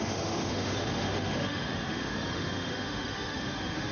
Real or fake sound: fake